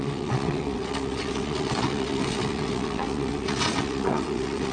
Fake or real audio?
fake